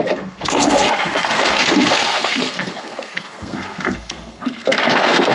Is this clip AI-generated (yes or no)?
yes